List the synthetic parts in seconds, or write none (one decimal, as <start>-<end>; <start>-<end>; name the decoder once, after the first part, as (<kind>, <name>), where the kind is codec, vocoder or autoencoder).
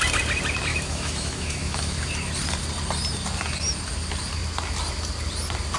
0.7-2.1 (autoencoder, DAC-VAE)